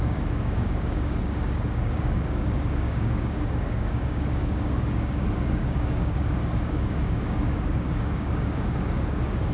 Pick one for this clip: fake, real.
fake